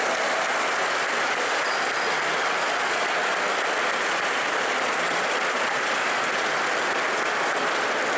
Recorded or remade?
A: recorded